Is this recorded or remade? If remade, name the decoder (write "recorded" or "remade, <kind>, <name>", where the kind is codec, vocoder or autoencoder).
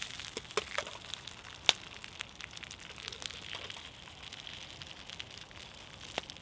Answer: recorded